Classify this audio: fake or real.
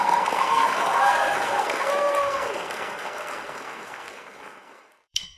fake